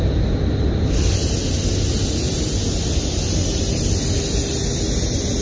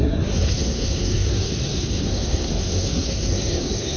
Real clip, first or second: first